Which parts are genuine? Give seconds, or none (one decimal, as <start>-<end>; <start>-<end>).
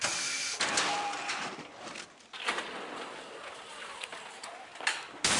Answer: 0.0-5.4